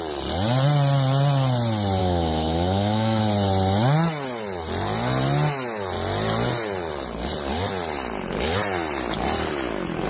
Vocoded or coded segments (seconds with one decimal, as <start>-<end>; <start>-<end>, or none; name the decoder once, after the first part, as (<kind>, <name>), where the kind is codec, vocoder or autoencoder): 2.0-3.2 (autoencoder, DAC-VAE)